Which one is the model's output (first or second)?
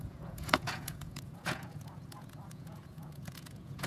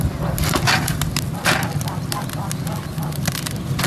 first